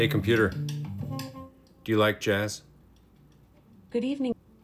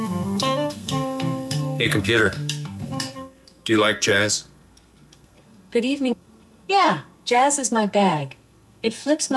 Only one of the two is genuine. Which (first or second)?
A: first